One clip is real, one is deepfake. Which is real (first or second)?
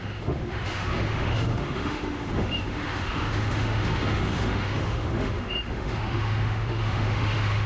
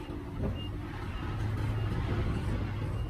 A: second